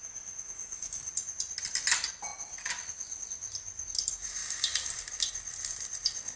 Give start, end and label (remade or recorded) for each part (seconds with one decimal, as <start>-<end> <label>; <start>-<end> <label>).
0.0-1.1 remade; 1.1-6.4 recorded